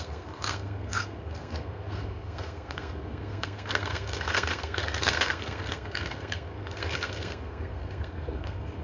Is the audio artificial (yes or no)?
yes